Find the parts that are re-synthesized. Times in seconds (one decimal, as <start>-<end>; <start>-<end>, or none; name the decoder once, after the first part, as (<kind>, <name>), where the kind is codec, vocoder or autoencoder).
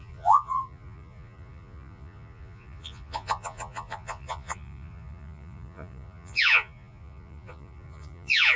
0.0-8.6 (vocoder, Vocos)